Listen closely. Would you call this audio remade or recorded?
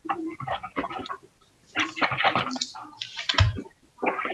recorded